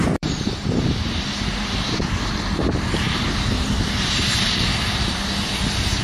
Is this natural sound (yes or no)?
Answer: no